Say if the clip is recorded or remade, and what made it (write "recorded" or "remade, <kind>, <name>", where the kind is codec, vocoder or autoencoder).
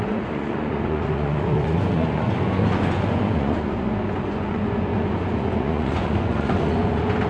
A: remade, vocoder, Vocos